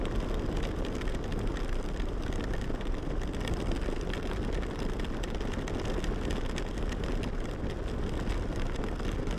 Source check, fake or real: real